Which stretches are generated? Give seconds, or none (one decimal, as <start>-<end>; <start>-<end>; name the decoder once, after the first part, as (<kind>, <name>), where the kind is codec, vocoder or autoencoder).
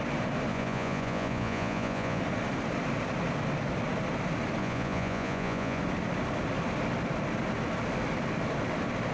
0.5-2.2 (vocoder, Vocos); 4.6-5.8